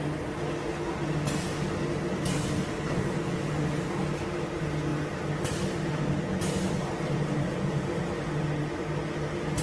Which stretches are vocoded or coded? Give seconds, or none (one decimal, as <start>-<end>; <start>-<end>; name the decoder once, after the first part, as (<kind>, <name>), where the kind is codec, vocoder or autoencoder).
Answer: none